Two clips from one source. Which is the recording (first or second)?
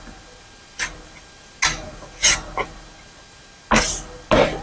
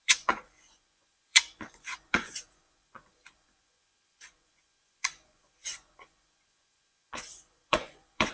first